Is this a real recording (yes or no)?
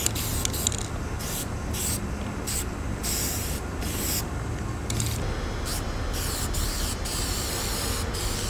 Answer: yes